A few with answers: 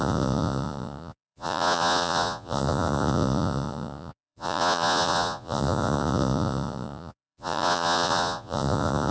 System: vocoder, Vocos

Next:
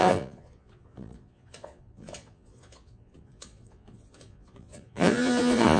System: vocoder, Vocos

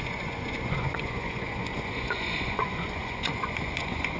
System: vocoder, Vocos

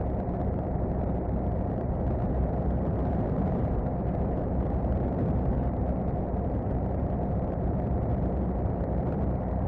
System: vocoder, BigVGAN v2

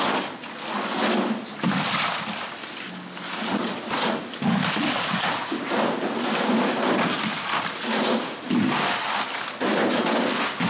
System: none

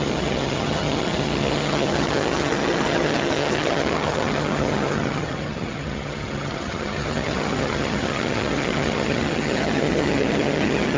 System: vocoder, HiFi-GAN